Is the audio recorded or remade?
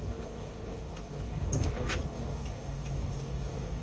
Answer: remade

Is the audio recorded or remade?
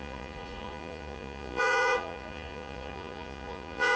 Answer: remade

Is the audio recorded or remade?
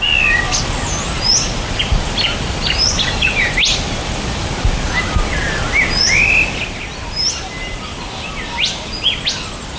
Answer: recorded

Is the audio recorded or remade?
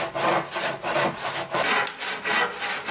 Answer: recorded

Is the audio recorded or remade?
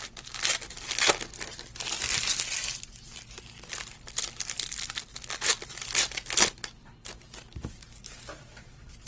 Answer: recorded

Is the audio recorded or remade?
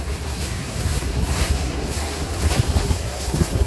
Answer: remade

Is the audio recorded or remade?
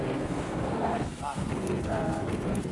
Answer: remade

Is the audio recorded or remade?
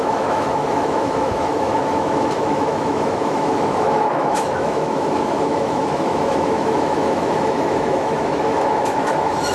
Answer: remade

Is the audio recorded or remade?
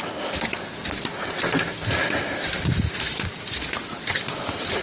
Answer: recorded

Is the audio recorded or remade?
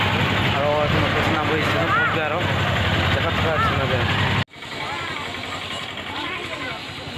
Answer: recorded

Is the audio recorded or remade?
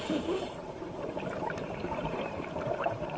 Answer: remade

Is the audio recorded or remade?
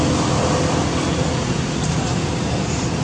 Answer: recorded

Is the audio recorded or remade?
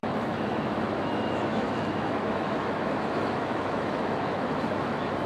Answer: remade